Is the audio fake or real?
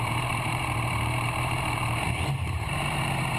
fake